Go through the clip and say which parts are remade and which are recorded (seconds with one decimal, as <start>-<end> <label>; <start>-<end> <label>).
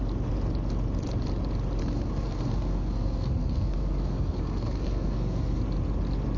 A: 0.0-1.8 recorded; 1.8-5.6 remade; 5.6-6.4 recorded